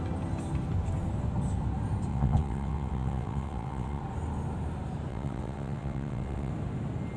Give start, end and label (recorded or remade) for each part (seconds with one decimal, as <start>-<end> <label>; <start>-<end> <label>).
0.0-2.1 recorded; 2.1-4.0 remade; 4.0-5.1 recorded; 5.1-6.5 remade; 6.5-7.2 recorded